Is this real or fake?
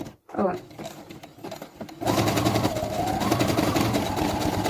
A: real